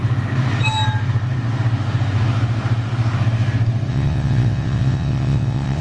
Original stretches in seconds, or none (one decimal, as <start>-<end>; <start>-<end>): 0.0-3.9